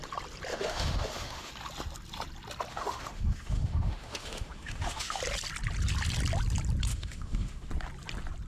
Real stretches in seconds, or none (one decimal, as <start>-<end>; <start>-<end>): 0.0-0.5; 1.5-2.7; 5.2-6.9; 7.7-8.5